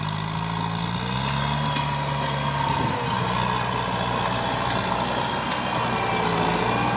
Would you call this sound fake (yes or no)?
no